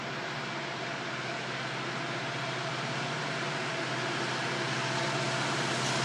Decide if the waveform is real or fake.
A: real